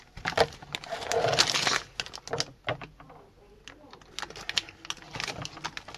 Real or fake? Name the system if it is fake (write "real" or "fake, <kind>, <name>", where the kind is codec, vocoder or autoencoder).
real